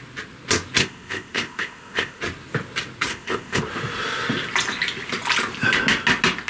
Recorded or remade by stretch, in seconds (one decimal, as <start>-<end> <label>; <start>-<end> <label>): 0.0-0.8 recorded; 0.8-2.2 remade; 2.2-3.1 recorded; 3.1-3.6 remade; 3.6-6.5 recorded